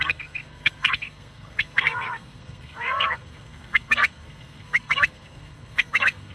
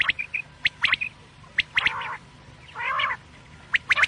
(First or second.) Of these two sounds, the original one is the second